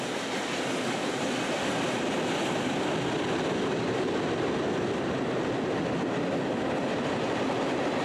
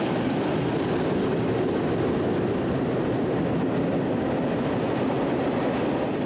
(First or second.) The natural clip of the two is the second